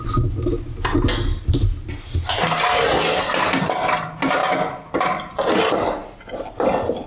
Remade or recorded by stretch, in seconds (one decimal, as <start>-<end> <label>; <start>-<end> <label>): 0.0-7.1 recorded